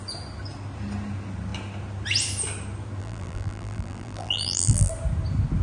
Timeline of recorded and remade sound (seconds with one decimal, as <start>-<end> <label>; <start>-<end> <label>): 0.0-3.0 recorded; 3.0-4.9 remade; 4.9-5.6 recorded